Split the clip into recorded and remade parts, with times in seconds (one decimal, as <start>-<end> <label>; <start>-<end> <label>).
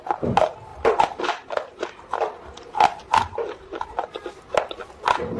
0.0-0.7 recorded; 0.7-1.2 remade; 1.2-2.9 recorded; 2.9-3.9 remade; 3.9-5.4 recorded